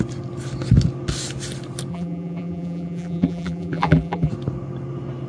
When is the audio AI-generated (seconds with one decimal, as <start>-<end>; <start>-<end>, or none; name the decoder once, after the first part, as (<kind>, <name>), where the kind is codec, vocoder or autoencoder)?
1.9-4.3 (vocoder, BigVGAN v2)